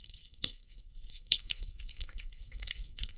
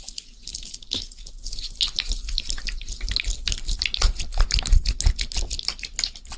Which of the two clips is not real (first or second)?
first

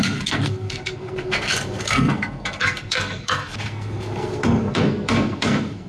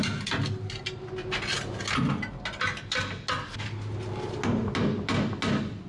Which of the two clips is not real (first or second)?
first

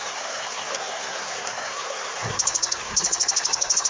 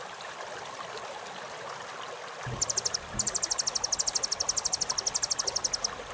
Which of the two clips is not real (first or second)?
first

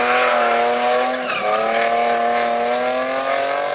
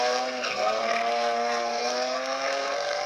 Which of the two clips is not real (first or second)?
second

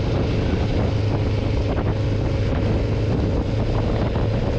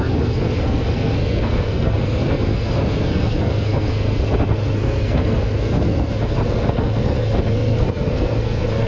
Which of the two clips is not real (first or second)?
second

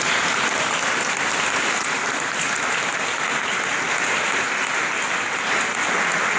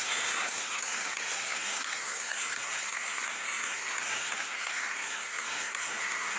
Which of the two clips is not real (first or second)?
second